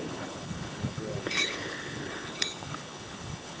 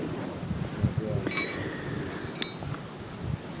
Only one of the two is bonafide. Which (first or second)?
second